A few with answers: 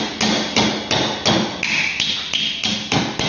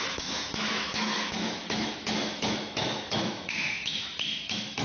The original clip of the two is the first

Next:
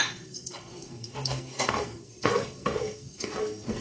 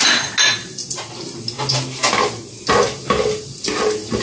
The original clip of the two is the second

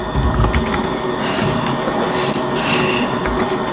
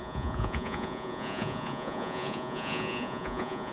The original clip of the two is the first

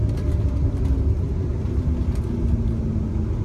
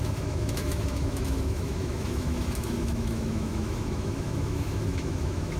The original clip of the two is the first